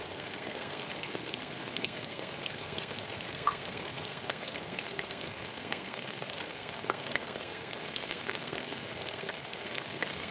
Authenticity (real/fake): fake